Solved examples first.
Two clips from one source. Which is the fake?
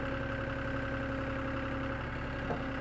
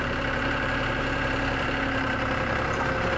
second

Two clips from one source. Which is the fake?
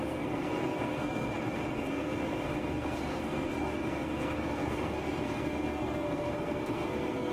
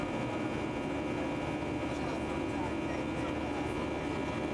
first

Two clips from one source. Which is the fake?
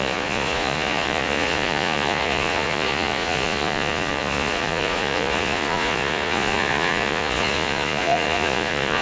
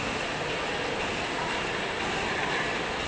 first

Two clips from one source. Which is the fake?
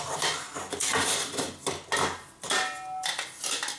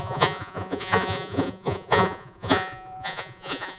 second